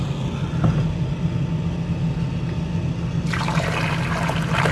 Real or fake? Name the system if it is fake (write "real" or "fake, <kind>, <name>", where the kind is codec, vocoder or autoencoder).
real